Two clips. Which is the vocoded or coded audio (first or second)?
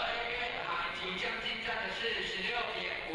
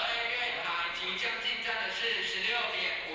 first